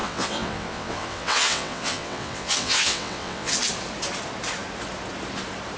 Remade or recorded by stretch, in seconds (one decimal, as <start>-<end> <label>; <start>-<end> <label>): 0.0-3.5 remade; 3.5-5.8 recorded